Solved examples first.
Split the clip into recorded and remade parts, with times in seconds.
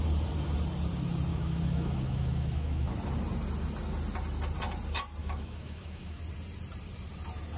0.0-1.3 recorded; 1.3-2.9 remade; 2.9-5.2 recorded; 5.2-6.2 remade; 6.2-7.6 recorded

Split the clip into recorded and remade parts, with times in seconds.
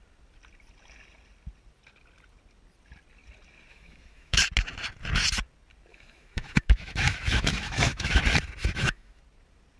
0.0-3.7 recorded; 3.7-4.4 remade; 4.4-5.9 recorded; 5.9-8.2 remade; 8.2-8.6 recorded; 8.6-9.2 remade; 9.2-9.8 recorded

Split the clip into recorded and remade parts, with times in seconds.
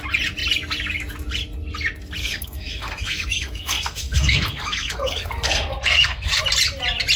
0.0-2.2 recorded; 2.2-6.4 remade; 6.4-7.2 recorded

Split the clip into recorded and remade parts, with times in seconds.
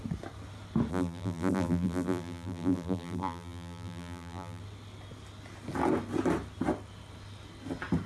0.0-0.9 recorded; 0.9-4.6 remade; 4.6-8.1 recorded